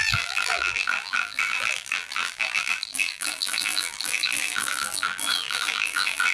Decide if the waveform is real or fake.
fake